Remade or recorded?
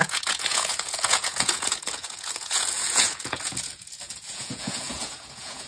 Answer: remade